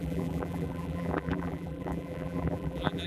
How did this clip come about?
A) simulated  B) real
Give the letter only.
A